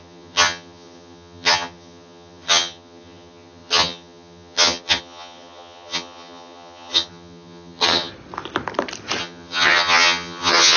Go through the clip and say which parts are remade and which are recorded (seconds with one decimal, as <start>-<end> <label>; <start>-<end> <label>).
0.0-8.1 remade; 8.1-9.2 recorded; 9.2-10.8 remade